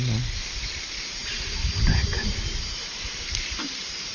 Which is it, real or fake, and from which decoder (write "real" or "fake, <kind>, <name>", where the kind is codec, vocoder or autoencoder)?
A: fake, vocoder, BigVGAN v2